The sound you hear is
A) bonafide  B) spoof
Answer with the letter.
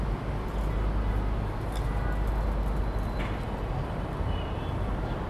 A